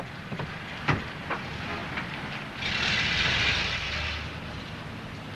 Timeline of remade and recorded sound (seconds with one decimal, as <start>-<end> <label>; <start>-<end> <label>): 0.0-5.3 recorded